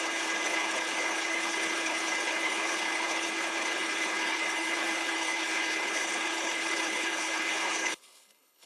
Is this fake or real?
fake